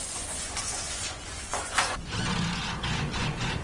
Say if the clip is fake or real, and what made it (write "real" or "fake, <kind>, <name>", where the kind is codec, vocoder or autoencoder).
fake, vocoder, Vocos